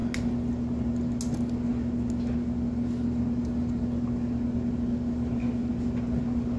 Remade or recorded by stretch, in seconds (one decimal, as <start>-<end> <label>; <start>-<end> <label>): 0.0-6.6 recorded